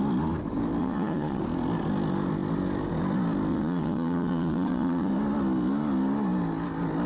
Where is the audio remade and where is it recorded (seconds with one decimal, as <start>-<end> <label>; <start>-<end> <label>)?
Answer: 0.0-0.8 recorded; 0.8-1.4 remade; 1.4-3.5 recorded; 3.5-5.1 remade; 5.1-7.1 recorded